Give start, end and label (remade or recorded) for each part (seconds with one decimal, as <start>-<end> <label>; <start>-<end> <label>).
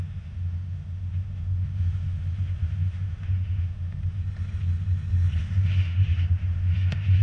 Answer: 0.0-4.2 remade; 4.2-5.4 recorded; 5.4-7.2 remade